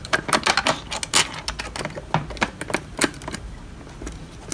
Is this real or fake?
real